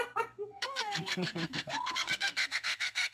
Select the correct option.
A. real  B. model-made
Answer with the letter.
B